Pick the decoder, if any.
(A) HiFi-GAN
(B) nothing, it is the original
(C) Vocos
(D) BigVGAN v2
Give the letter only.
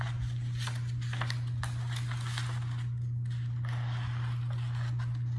B